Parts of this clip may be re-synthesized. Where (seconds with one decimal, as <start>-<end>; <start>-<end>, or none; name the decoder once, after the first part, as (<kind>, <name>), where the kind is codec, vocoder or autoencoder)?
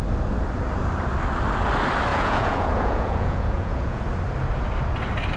2.1-4.0 (vocoder, Vocos)